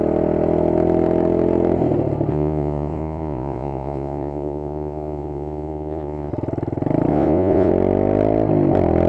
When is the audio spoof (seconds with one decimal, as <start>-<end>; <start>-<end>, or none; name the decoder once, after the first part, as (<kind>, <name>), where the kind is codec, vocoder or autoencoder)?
2.3-6.3 (vocoder, Vocos); 7.1-7.7